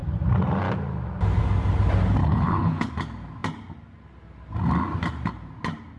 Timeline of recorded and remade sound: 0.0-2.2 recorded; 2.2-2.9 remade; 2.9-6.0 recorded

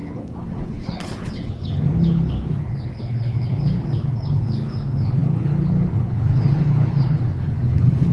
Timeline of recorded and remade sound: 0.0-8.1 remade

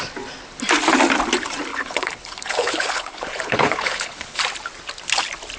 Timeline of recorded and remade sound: 0.0-1.7 recorded; 1.7-4.4 remade; 4.4-5.6 recorded

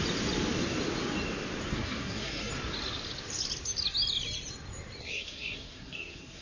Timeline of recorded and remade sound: 0.0-1.7 recorded; 1.7-2.5 remade; 2.5-5.0 recorded; 5.0-6.4 remade